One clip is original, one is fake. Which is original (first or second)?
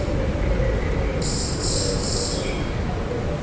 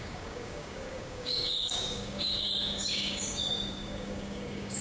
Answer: first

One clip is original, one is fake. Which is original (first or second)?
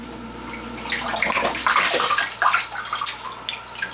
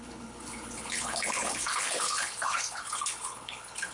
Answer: first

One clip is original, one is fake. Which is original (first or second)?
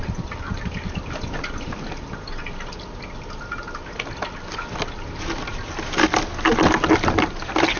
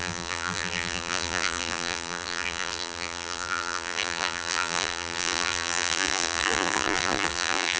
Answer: first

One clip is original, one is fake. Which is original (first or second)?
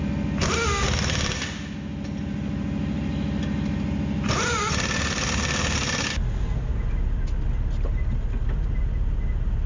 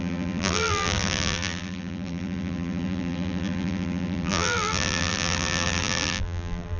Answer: first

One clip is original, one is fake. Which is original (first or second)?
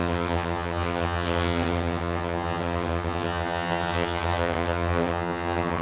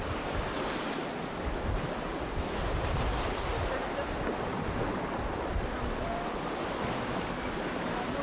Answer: second